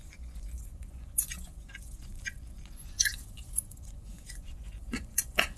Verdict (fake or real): fake